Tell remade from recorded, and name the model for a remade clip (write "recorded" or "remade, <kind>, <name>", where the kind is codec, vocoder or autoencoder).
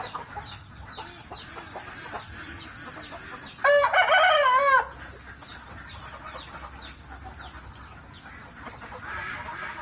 recorded